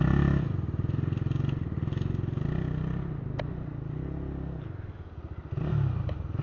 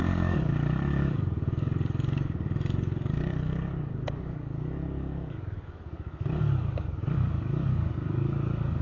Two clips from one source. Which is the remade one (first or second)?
second